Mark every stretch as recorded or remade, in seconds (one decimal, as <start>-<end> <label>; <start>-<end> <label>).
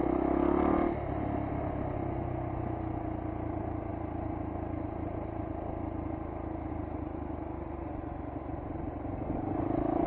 0.0-10.1 recorded